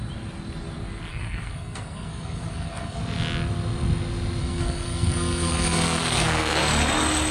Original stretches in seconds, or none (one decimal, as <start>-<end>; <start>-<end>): 0.0-1.1; 3.0-4.4; 6.6-7.3